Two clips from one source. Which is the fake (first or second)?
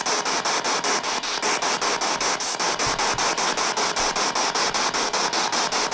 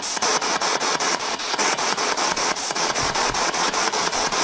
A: second